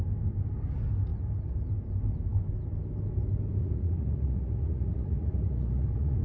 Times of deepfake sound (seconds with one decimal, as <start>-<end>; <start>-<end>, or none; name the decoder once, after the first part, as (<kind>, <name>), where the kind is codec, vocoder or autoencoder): 3.6-6.2 (vocoder, Vocos)